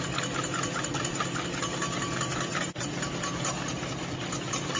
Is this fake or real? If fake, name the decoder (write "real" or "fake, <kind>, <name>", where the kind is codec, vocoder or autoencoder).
real